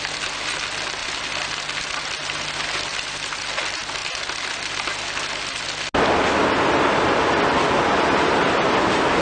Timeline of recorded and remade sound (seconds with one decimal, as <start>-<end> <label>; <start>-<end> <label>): 0.0-9.2 recorded